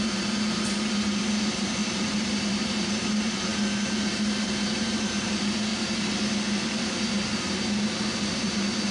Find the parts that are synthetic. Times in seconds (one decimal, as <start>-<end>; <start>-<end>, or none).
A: 0.0-5.7; 8.2-8.9